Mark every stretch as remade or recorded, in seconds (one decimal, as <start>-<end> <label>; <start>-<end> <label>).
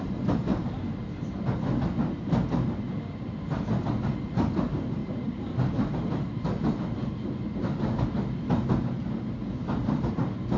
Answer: 0.0-10.6 recorded